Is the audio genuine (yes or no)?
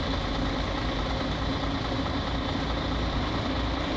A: yes